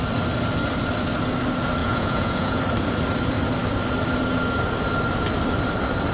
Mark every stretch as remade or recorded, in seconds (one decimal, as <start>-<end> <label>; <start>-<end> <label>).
0.0-1.8 recorded; 1.8-2.6 remade; 2.6-6.1 recorded